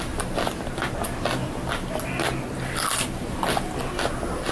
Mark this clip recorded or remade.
recorded